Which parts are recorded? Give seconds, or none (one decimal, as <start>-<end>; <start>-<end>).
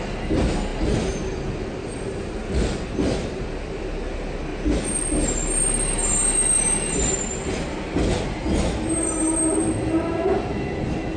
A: 0.0-11.2